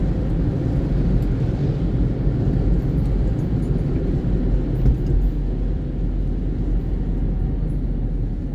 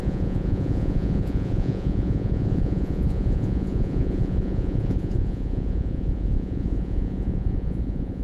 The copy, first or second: second